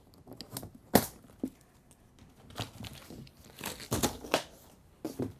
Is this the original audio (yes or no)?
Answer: yes